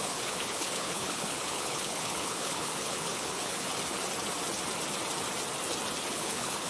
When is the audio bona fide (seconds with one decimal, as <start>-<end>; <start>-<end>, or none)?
3.7-6.1